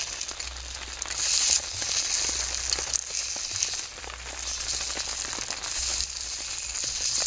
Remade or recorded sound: recorded